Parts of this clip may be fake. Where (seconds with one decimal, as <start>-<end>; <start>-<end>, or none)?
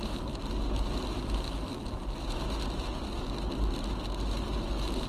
0.0-1.7